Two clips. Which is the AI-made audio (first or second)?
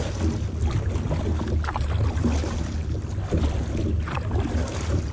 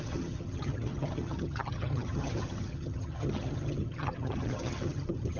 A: second